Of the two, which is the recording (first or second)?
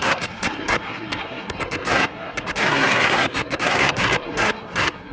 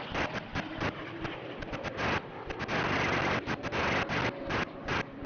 second